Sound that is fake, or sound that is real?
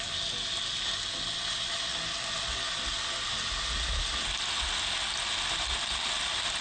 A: real